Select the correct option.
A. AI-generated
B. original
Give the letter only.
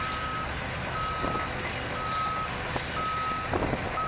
B